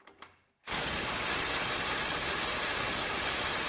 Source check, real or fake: real